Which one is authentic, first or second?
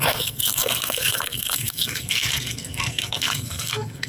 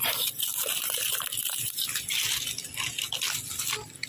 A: second